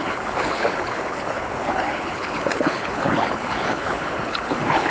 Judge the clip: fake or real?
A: fake